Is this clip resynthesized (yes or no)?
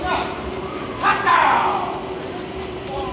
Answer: no